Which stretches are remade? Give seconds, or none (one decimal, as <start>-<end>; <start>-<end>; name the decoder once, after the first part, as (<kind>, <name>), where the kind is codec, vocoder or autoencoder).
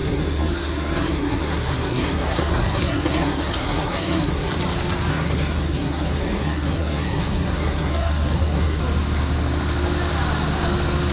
0.0-4.5 (codec, SNAC); 5.1-8.8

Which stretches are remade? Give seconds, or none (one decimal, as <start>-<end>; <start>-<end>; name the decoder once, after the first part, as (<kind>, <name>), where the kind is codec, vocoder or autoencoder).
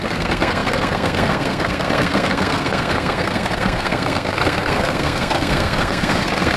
0.0-6.6 (codec, SNAC)